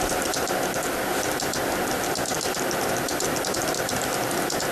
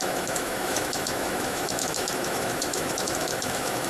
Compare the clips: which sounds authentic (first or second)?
first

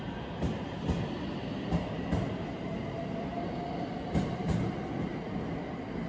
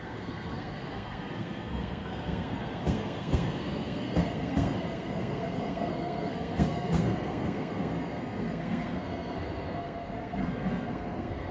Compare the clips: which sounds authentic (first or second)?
first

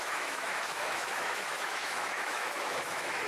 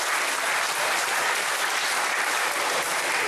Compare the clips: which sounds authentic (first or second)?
second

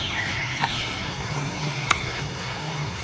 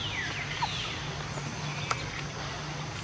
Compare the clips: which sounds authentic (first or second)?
second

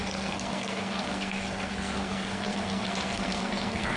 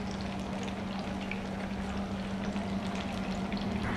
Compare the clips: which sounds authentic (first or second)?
second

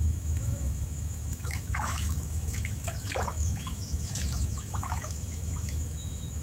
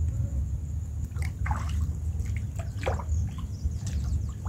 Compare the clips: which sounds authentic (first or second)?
second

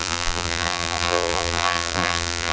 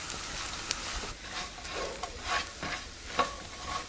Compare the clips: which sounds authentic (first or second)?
second